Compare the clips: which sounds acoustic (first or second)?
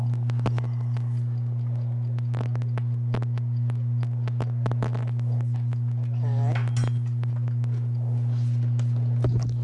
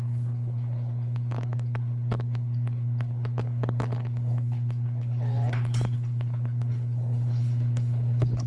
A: first